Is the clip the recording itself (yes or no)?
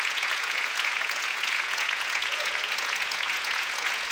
no